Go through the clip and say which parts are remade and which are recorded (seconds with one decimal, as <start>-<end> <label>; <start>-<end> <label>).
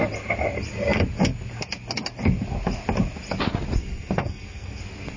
0.0-3.8 recorded; 3.8-4.8 remade; 4.8-5.2 recorded